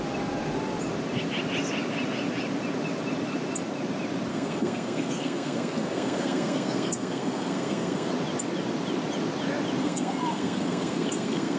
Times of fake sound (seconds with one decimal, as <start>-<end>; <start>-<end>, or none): 4.3-8.1; 9.8-11.6